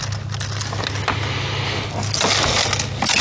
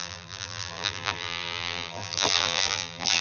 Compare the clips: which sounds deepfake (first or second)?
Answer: second